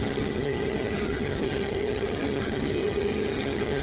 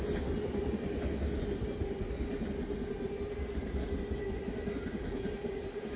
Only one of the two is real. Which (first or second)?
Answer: second